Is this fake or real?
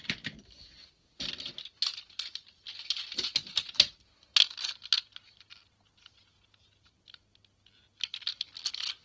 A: real